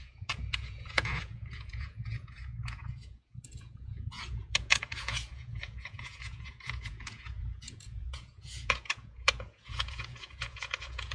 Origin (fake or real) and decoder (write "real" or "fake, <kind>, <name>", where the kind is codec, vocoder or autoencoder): fake, vocoder, Vocos